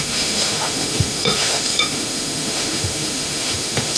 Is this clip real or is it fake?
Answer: fake